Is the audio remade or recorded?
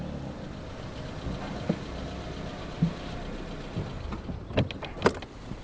recorded